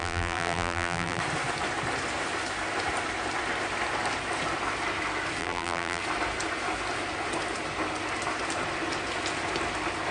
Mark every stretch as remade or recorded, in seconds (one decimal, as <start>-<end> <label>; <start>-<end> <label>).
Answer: 0.0-1.2 remade; 1.2-5.4 recorded; 5.4-6.0 remade; 6.0-10.1 recorded